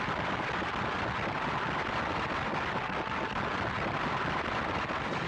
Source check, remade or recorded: recorded